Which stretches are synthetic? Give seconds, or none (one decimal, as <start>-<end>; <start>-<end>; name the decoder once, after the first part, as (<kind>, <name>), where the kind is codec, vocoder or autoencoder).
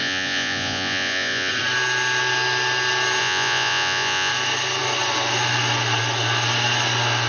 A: 0.0-1.5 (vocoder, Vocos); 3.2-4.3